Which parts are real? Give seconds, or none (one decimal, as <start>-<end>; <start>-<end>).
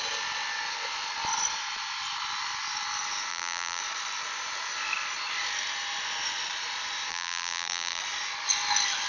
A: 0.0-3.3; 3.8-7.1; 8.0-9.1